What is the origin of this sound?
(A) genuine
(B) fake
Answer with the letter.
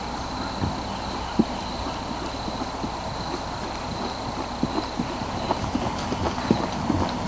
A